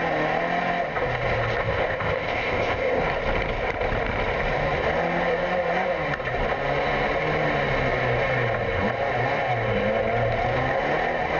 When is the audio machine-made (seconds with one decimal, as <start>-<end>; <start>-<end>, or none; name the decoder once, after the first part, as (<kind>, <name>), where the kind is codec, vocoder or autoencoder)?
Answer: 1.6-3.0 (codec, ZipCodec)